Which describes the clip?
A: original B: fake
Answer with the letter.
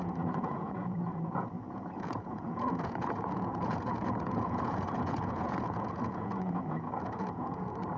B